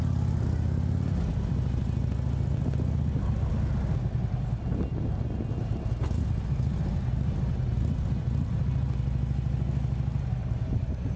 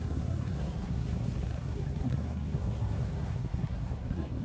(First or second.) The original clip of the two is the first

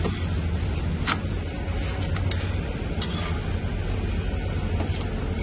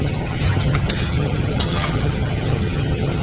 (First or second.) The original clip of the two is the first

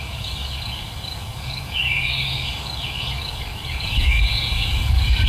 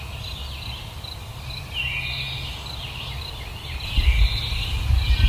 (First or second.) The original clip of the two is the second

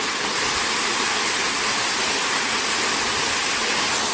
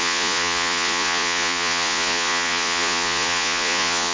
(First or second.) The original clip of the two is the first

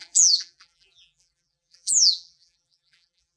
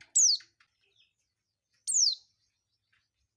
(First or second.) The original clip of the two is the second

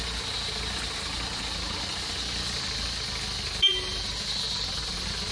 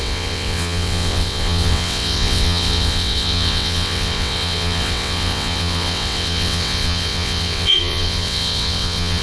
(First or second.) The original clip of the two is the first